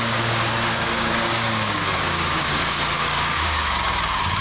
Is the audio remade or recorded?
remade